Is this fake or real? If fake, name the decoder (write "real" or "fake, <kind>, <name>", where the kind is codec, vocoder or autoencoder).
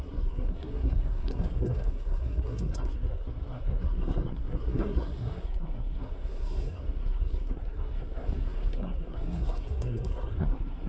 fake, codec, SNAC